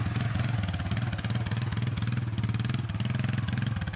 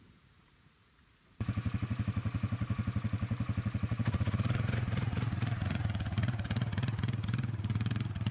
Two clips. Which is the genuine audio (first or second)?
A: first